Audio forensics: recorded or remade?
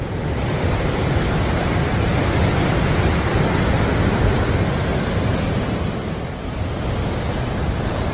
recorded